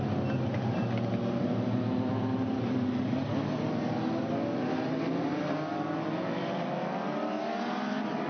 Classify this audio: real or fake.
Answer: real